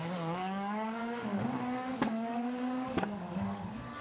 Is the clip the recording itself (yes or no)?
no